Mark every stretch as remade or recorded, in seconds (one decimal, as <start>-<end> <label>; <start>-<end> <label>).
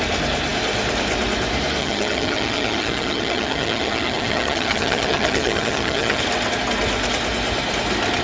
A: 0.0-1.8 recorded; 1.8-6.2 remade; 6.2-8.2 recorded